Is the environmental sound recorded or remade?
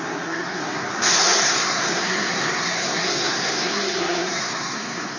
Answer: remade